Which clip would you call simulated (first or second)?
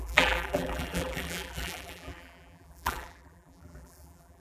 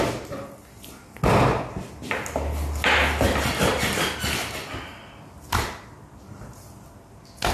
first